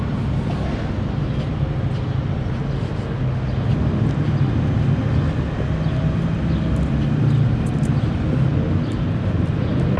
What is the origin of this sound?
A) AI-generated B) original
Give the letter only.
B